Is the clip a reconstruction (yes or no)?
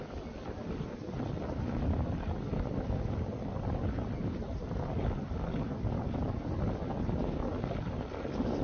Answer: no